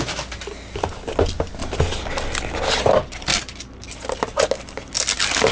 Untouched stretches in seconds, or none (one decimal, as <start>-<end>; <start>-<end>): 0.0-5.5